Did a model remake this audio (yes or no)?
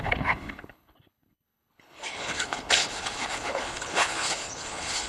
yes